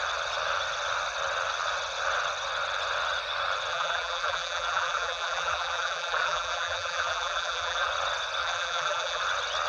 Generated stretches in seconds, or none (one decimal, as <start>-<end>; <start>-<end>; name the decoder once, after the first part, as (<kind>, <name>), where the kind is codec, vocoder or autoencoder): 3.7-7.9 (vocoder, BigVGAN v2); 8.4-9.2